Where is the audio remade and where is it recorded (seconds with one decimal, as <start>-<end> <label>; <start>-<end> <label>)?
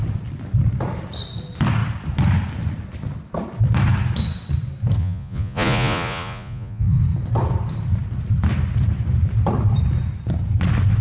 0.0-5.0 recorded; 5.0-7.0 remade; 7.0-11.0 recorded